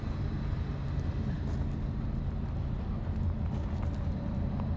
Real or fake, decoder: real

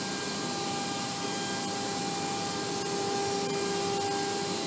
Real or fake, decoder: real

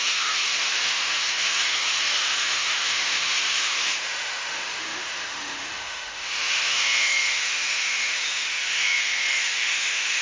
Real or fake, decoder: fake, autoencoder, DAC-VAE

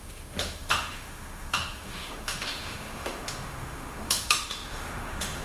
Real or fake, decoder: fake, autoencoder, DAC-VAE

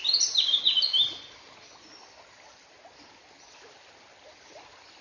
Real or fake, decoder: real